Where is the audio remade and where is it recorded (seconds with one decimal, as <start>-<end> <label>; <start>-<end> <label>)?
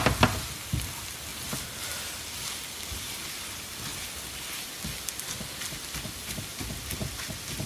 0.0-7.7 recorded